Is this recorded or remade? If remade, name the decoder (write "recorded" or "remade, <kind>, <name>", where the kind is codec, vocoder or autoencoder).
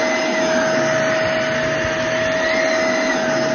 recorded